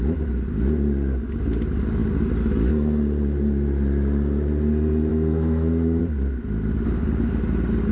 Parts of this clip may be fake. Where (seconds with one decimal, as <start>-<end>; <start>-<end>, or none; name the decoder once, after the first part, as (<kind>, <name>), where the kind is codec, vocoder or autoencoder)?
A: 5.1-6.0 (autoencoder, DAC-VAE)